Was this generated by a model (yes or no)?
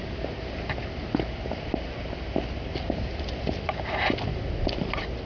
no